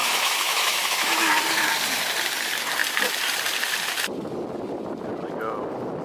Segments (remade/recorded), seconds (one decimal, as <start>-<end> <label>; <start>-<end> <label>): 0.0-1.3 remade; 1.3-6.0 recorded